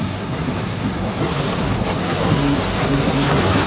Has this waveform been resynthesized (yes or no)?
yes